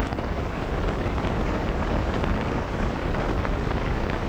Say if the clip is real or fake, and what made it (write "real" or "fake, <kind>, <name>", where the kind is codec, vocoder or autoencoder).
fake, codec, DAC